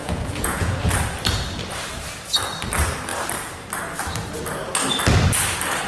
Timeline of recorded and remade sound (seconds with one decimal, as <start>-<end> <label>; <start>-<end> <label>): 0.0-0.9 remade; 0.9-5.9 recorded